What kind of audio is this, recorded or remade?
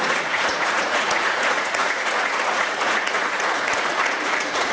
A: remade